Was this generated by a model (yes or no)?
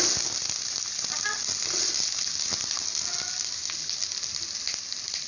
no